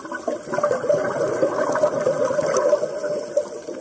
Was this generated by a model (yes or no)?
no